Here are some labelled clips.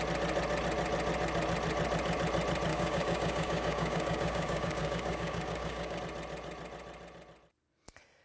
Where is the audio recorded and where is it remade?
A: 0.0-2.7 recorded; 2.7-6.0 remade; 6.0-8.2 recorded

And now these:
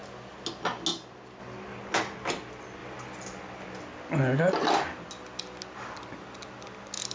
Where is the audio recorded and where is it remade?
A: 0.0-7.1 recorded

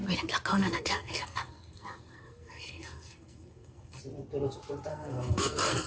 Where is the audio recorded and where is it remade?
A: 0.0-0.5 recorded; 0.5-4.0 remade; 4.0-4.9 recorded; 4.9-5.9 remade